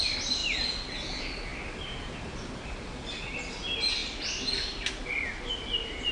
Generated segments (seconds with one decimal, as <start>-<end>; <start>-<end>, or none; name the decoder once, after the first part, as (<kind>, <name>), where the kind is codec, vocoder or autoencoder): none